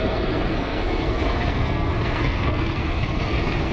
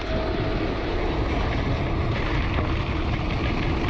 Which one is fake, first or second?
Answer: first